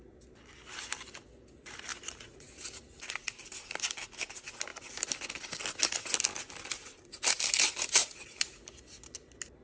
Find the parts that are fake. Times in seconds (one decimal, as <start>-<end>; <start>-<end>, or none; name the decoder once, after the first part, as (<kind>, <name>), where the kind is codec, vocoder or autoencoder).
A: 1.9-2.5 (vocoder, Vocos); 8.0-8.6